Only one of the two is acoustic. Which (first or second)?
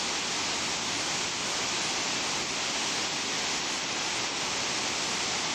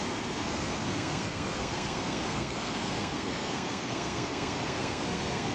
first